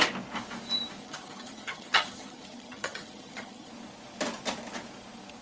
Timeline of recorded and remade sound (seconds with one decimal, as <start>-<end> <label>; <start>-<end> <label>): 0.0-1.0 recorded; 1.0-3.7 remade; 3.7-5.4 recorded